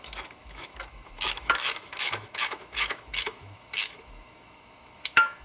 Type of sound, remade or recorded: remade